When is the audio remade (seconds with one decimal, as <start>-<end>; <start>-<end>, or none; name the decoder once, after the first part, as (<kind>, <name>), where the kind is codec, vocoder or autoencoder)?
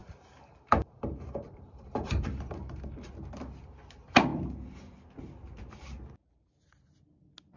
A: 0.0-3.1 (vocoder, BigVGAN v2)